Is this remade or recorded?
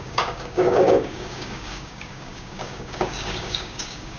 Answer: remade